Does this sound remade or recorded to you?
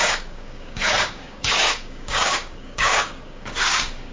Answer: remade